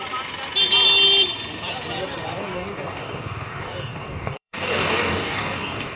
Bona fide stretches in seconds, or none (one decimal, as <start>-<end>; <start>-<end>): 0.0-2.4